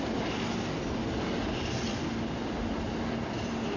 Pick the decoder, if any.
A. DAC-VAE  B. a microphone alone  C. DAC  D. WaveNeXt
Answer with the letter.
B